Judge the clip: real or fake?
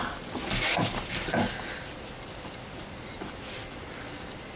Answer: real